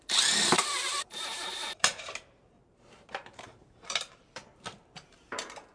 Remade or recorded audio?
remade